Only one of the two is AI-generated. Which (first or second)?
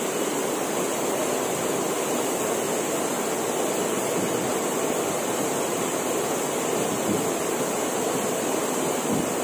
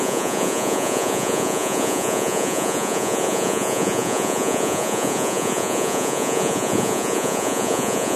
second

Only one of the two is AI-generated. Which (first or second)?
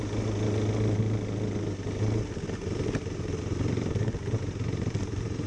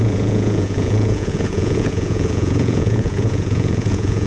second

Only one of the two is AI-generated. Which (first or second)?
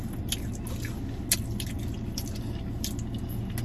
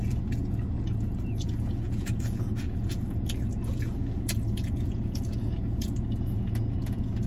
second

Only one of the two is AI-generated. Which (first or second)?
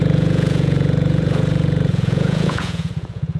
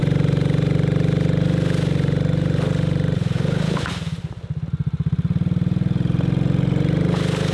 first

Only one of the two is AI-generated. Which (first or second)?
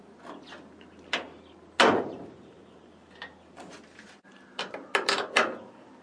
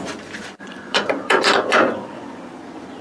second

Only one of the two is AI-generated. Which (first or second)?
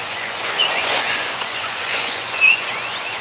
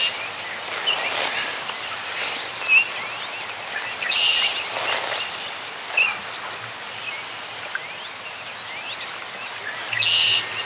first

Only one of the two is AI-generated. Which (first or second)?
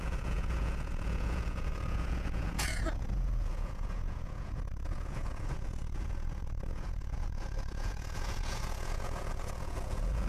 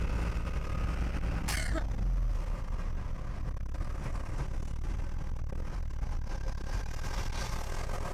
first